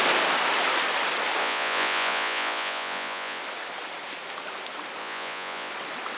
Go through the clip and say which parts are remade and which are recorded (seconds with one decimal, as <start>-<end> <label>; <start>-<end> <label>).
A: 0.0-1.4 recorded; 1.4-3.4 remade; 3.4-5.0 recorded; 5.0-5.7 remade; 5.7-6.2 recorded